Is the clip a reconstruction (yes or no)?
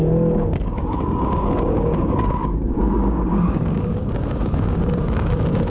yes